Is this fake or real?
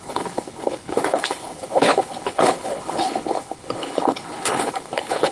fake